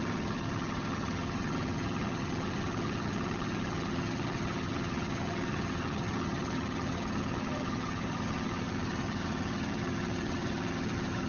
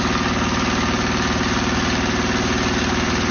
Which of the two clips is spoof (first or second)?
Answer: first